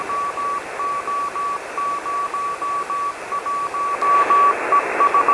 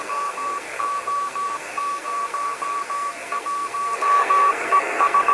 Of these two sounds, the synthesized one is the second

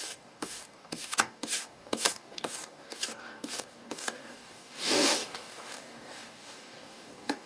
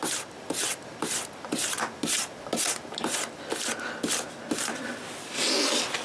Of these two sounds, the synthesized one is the first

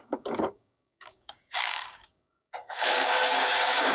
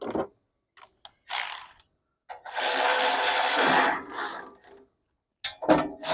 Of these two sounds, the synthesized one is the first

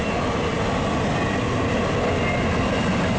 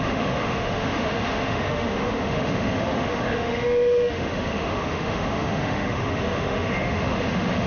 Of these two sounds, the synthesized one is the second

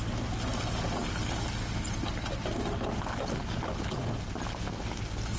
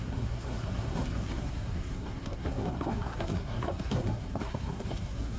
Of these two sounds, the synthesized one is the second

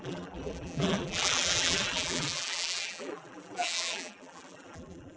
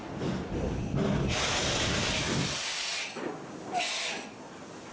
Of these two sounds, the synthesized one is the first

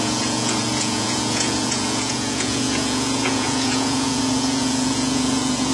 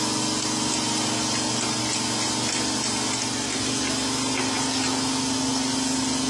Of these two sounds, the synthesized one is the first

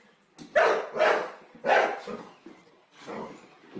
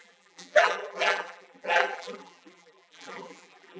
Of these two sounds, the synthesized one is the second